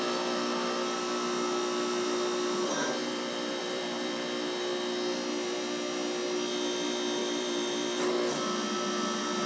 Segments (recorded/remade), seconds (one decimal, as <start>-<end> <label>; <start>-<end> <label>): 0.0-3.0 recorded; 3.0-4.2 remade; 4.2-7.2 recorded; 7.2-8.1 remade; 8.1-9.5 recorded

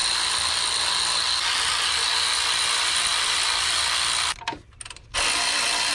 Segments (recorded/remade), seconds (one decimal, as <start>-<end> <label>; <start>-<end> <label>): 0.0-5.9 recorded

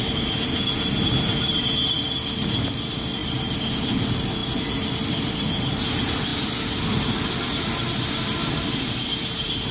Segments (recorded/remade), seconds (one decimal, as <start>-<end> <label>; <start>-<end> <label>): 0.0-9.7 recorded

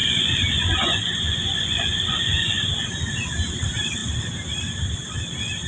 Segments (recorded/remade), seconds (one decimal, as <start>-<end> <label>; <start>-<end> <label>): 0.0-2.7 remade; 2.7-5.7 recorded

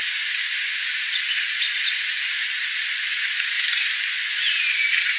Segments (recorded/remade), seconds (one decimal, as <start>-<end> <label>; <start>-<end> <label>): 0.0-1.1 remade; 1.1-5.2 recorded

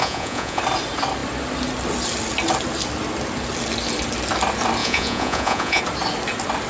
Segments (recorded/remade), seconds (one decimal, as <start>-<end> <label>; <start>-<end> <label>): 0.0-0.6 remade; 0.6-4.8 recorded; 4.8-5.8 remade; 5.8-6.7 recorded